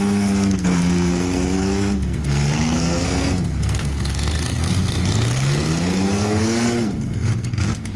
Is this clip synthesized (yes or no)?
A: yes